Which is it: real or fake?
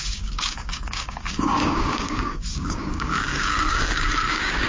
fake